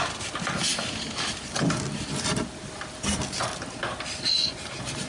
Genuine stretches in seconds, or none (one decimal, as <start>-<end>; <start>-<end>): 0.0-5.1